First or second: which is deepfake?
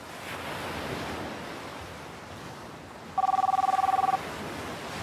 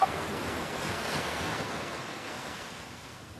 second